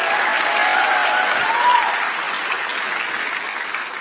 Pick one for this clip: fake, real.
real